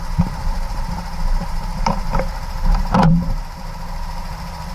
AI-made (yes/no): yes